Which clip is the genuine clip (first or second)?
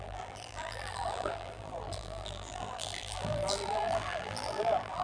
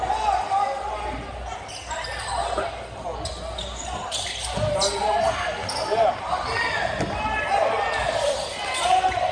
second